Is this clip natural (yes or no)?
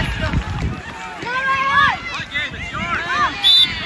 yes